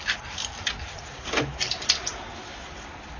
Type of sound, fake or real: real